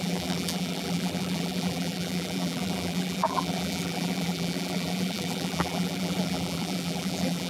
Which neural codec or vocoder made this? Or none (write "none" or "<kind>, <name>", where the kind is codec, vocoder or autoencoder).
vocoder, BigVGAN v2